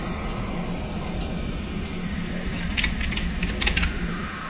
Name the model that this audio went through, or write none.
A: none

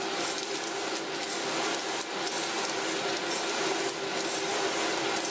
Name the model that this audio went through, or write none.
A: none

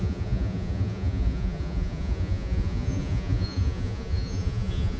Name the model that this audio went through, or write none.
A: vocoder, Vocos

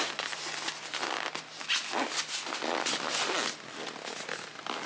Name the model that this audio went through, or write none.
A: none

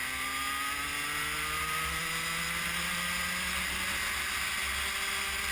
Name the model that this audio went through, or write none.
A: none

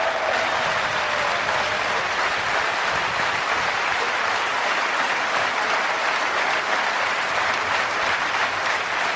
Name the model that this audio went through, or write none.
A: none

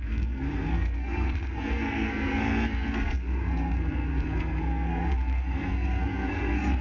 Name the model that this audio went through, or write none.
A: codec, SNAC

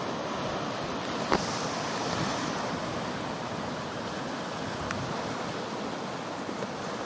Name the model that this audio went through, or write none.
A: none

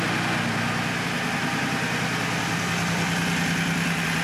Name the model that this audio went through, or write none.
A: none